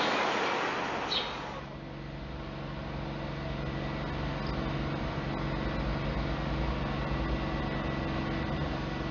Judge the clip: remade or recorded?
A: recorded